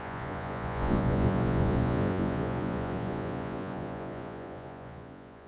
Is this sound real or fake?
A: fake